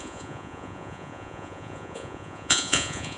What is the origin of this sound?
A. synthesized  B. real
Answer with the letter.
A